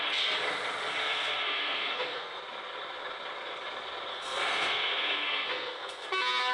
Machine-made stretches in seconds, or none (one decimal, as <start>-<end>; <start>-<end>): 1.0-2.4; 4.1-6.1